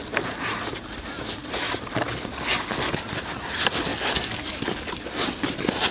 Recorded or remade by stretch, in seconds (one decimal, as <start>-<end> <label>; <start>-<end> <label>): 0.0-3.9 recorded; 3.9-5.0 remade; 5.0-5.9 recorded